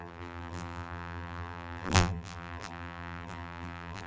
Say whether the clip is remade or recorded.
remade